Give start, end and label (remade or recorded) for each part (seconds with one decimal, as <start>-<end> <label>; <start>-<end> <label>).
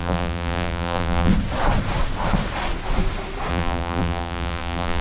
0.0-1.3 remade; 1.3-3.5 recorded; 3.5-5.0 remade